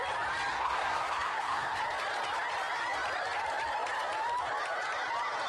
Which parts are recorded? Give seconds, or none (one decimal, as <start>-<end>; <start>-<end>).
0.0-0.5; 1.8-5.5